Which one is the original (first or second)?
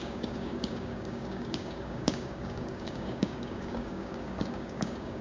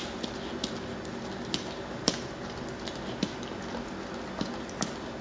second